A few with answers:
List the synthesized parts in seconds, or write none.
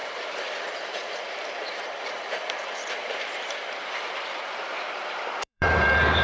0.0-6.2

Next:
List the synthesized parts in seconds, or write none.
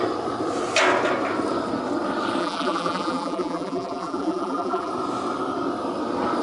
2.4-4.9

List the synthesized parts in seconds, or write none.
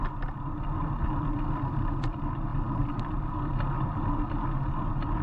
none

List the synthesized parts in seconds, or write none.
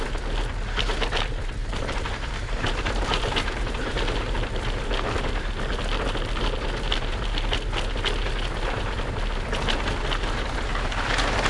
1.6-4.4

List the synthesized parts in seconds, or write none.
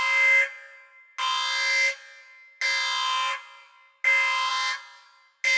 none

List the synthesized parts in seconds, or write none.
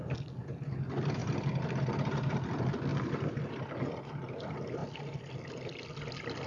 2.9-3.5